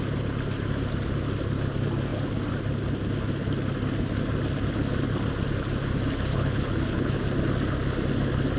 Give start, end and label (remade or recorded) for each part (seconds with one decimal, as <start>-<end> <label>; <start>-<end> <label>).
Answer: 0.0-6.3 recorded; 6.3-7.1 remade; 7.1-8.6 recorded